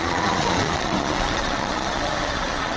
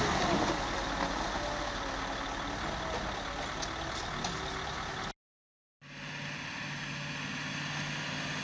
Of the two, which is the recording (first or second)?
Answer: second